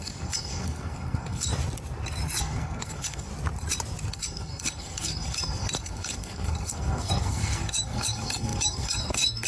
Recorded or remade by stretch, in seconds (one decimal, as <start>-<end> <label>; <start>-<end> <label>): 0.0-1.5 remade; 1.5-2.4 recorded; 2.4-3.3 remade; 3.3-4.1 recorded; 4.1-9.5 remade